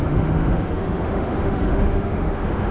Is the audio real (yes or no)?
no